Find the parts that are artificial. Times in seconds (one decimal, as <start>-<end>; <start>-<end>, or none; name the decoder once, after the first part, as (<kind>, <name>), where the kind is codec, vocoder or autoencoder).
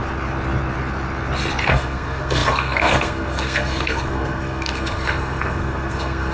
1.7-6.3 (codec, SNAC)